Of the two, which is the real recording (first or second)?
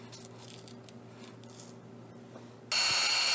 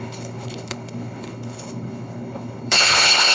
first